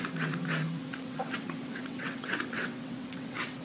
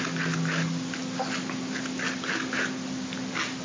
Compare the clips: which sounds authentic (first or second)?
second